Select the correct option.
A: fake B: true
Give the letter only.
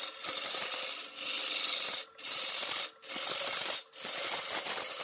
B